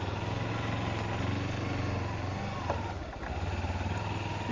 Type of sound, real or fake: real